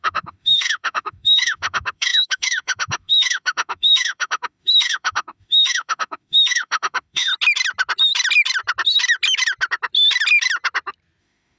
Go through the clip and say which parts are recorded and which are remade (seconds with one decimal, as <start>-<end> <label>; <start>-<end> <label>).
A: 0.0-7.3 remade; 7.3-11.2 recorded; 11.2-11.6 remade